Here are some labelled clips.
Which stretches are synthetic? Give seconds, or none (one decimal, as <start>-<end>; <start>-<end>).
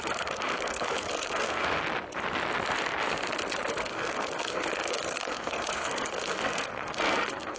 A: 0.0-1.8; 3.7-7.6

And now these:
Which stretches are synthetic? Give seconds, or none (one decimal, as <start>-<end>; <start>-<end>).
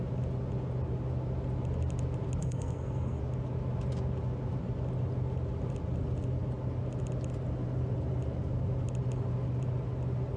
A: 2.4-3.2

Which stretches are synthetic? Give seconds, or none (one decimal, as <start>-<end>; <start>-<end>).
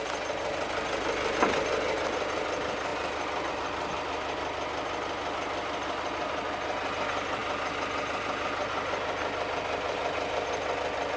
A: none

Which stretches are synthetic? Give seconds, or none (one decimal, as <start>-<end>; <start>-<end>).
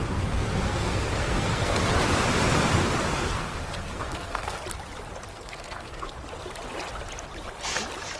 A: 0.0-2.0; 3.1-4.6; 5.3-6.1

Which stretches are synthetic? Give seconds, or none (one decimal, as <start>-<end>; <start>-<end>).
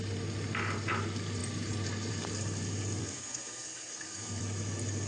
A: 3.0-4.4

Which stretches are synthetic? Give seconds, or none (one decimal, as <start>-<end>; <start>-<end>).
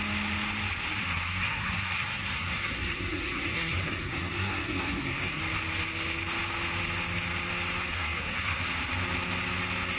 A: 1.0-5.4; 7.9-8.6